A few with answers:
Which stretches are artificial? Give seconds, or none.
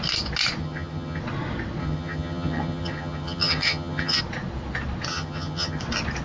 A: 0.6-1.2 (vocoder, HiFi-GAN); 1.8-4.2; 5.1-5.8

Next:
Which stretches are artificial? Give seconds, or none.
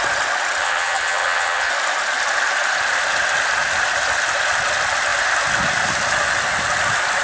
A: 0.6-1.7 (vocoder, HiFi-GAN)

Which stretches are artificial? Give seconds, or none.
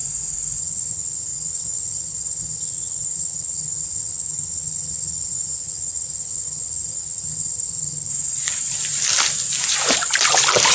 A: 0.6-8.1 (vocoder, HiFi-GAN)